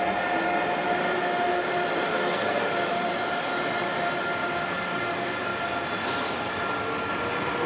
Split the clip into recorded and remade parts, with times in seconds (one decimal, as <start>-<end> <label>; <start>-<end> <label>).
0.0-2.1 recorded; 2.1-2.7 remade; 2.7-7.7 recorded